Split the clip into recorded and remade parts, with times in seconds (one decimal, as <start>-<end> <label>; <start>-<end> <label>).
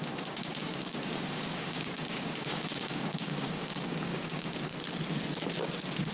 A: 0.0-4.7 remade; 4.7-6.1 recorded